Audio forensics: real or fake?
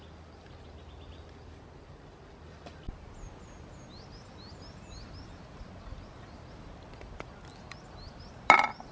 real